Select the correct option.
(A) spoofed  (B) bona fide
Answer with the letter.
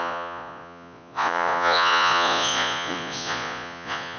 A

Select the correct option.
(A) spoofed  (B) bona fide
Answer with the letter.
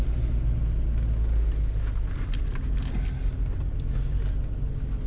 B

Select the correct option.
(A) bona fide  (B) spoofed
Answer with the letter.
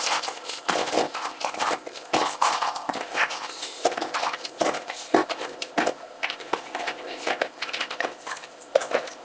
B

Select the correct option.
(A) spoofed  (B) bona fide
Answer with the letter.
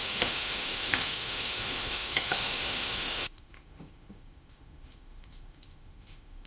A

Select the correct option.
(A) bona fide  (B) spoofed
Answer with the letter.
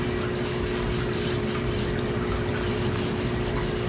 A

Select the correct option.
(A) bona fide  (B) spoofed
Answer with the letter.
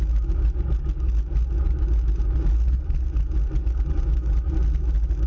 A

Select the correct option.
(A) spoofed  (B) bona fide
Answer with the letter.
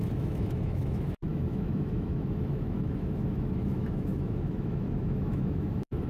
A